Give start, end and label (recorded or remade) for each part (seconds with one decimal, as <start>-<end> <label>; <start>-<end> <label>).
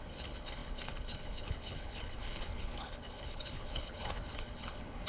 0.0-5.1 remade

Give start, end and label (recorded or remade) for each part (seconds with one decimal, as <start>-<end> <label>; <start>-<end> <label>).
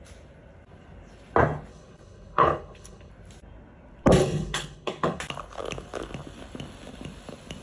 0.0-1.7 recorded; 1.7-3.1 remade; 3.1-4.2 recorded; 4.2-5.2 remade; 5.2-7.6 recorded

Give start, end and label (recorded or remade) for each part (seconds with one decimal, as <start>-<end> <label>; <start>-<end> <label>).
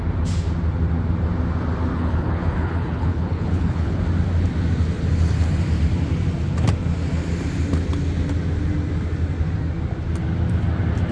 0.0-1.9 recorded; 1.9-4.0 remade; 4.0-11.1 recorded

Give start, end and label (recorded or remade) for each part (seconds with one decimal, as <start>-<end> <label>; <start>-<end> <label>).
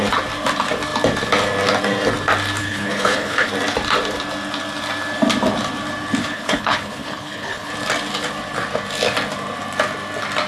0.0-2.6 recorded; 2.6-3.5 remade; 3.5-6.2 recorded; 6.2-7.7 remade; 7.7-10.5 recorded